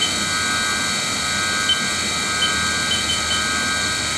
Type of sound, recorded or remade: recorded